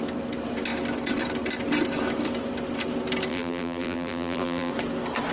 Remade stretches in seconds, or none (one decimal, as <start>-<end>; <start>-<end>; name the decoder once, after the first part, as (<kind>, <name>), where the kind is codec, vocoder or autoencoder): 3.3-4.7 (vocoder, BigVGAN v2)